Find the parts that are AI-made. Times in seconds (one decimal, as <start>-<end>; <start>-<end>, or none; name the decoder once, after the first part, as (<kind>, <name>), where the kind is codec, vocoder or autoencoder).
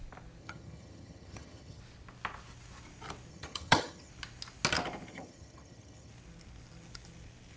0.4-1.8 (vocoder, HiFi-GAN); 3.3-4.1; 5.1-6.1